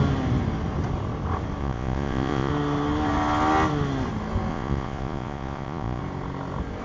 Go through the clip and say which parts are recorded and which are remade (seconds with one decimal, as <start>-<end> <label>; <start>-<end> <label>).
0.0-1.6 recorded; 1.6-2.5 remade; 2.5-4.5 recorded; 4.5-6.0 remade; 6.0-6.8 recorded